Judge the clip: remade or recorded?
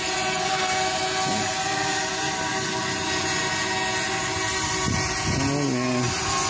recorded